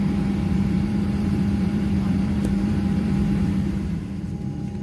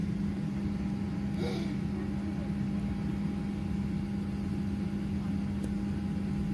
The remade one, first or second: first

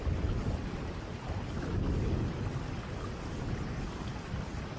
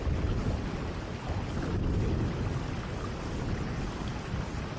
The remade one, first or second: first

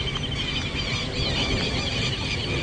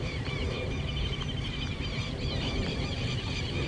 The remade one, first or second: second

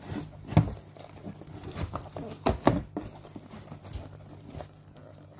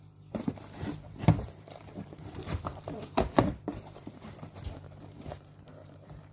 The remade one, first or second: second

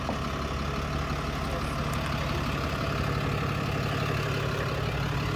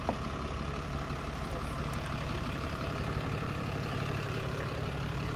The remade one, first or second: second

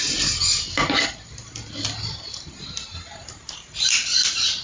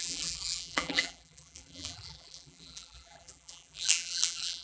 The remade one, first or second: second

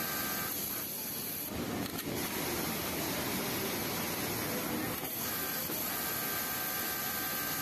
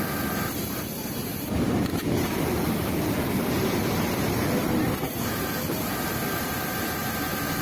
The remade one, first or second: second